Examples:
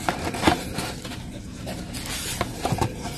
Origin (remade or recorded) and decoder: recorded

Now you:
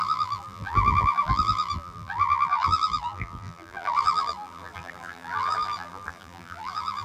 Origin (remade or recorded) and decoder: remade, vocoder, BigVGAN v2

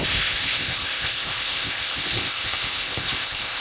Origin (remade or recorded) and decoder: remade, codec, ZipCodec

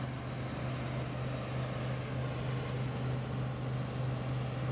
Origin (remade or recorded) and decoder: recorded